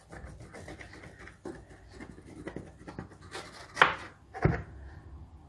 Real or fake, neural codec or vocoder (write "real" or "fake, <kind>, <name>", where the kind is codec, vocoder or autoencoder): real